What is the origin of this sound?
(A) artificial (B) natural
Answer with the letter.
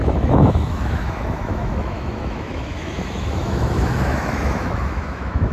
A